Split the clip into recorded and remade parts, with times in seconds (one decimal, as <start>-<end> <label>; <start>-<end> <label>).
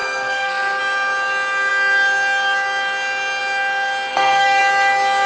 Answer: 0.0-0.8 remade; 0.8-4.1 recorded; 4.1-4.6 remade; 4.6-5.3 recorded